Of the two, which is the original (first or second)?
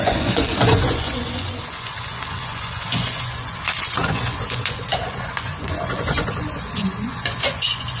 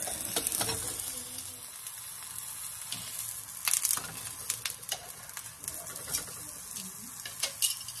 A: second